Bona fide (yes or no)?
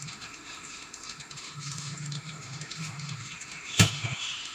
no